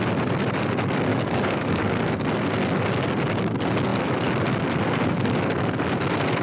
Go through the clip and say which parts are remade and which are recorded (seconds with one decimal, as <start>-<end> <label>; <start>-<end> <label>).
0.0-1.1 recorded; 1.1-1.9 remade; 1.9-6.4 recorded